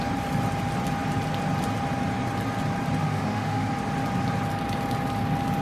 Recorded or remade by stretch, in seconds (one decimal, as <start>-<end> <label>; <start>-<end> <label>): 0.0-3.0 recorded; 3.0-3.7 remade; 3.7-5.6 recorded